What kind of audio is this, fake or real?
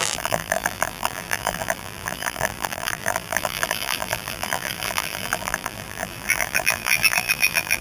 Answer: fake